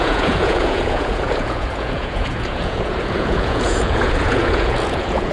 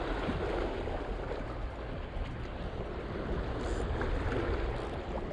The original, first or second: second